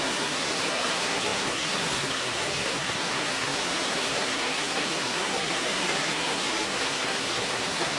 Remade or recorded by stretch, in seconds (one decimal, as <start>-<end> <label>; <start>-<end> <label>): 0.0-8.0 remade